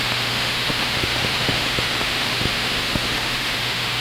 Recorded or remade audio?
remade